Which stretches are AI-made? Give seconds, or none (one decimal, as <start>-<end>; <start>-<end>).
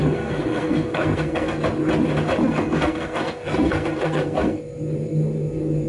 0.0-1.6; 2.4-4.6